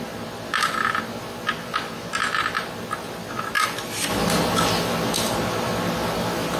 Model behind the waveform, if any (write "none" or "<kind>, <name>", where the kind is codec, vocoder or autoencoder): none